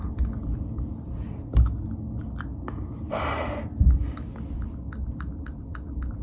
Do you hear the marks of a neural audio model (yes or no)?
no